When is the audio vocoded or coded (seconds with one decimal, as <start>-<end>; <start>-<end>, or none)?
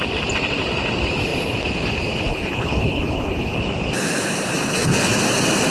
2.3-3.6; 4.6-5.1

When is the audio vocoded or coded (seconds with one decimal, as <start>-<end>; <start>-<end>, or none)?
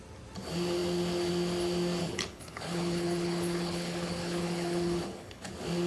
2.0-5.5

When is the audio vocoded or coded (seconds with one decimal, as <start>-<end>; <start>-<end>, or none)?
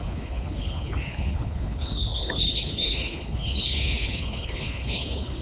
0.0-5.4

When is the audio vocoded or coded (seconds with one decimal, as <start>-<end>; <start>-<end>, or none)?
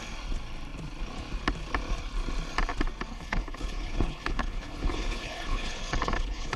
3.1-6.6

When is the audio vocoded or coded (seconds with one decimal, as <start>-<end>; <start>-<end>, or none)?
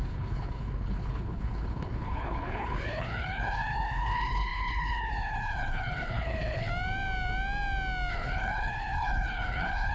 0.0-6.7; 8.1-9.9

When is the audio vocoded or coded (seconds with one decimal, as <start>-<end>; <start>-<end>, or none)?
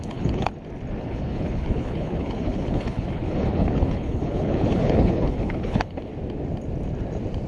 0.0-0.5; 1.0-6.1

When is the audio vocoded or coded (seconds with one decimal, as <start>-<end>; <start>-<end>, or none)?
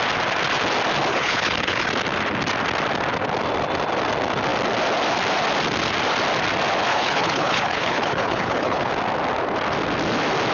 1.1-1.9; 6.9-8.9